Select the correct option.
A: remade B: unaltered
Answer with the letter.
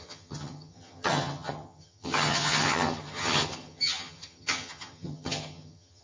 A